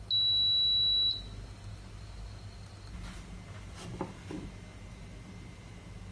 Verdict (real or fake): real